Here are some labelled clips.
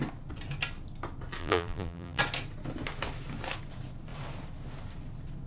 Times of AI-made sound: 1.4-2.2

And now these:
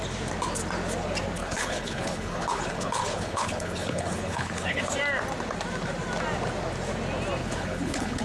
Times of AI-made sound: 1.4-4.8; 7.4-8.2

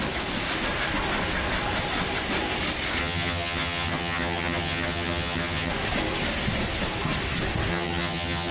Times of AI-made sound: 3.0-5.7; 7.7-8.5

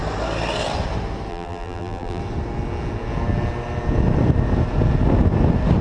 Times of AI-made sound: 1.3-2.2

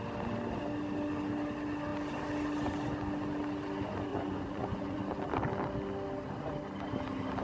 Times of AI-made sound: 4.1-5.0

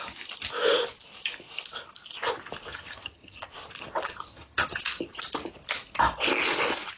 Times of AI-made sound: 2.7-3.5; 4.3-4.8

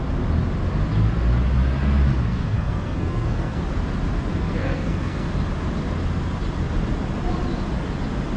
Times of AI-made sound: 2.3-3.6; 4.3-5.3

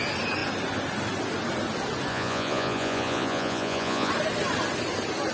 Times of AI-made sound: 2.1-4.1